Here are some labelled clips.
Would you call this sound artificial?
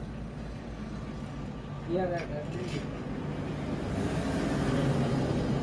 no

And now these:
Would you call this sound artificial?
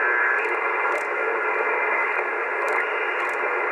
no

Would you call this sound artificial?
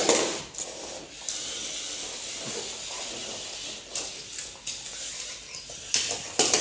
no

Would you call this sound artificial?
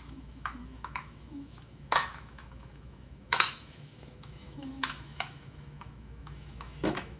yes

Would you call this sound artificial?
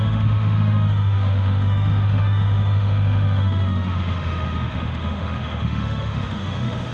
yes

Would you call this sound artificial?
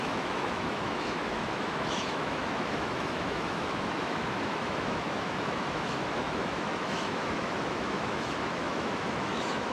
yes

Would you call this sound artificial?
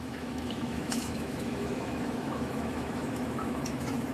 yes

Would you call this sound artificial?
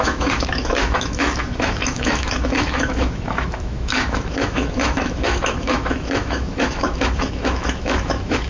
yes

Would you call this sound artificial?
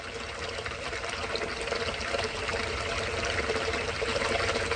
no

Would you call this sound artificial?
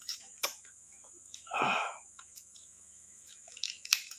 yes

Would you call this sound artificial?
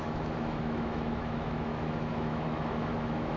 yes